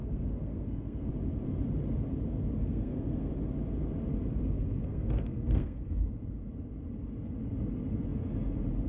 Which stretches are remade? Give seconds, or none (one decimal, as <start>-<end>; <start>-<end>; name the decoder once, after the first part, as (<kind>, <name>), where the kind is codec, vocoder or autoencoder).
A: 0.0-1.1 (codec, SNAC); 2.6-3.3; 4.4-6.1